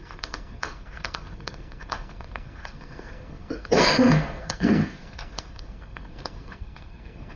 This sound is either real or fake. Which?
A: fake